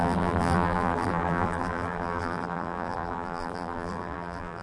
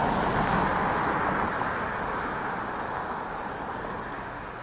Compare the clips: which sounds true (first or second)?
second